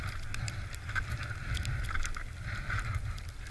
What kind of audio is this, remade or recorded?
recorded